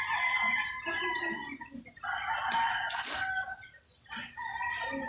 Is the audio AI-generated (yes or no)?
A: no